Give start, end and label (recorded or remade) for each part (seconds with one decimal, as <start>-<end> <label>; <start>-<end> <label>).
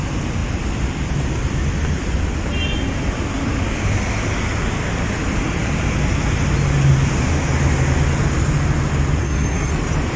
0.0-9.2 recorded; 9.2-9.7 remade; 9.7-10.2 recorded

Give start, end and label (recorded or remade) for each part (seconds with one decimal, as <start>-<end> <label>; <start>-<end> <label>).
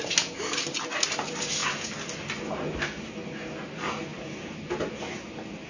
0.0-5.7 recorded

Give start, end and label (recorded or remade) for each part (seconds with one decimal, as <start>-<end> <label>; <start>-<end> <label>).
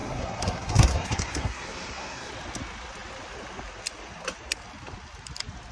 0.0-2.3 remade; 2.3-5.7 recorded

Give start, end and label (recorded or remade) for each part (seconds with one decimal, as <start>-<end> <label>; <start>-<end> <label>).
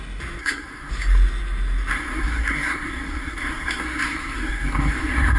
0.0-0.4 recorded; 0.4-0.9 remade; 0.9-1.9 recorded; 1.9-5.4 remade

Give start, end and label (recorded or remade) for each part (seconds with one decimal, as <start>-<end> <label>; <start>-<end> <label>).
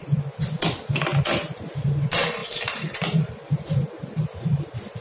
0.0-2.4 recorded; 2.4-5.0 remade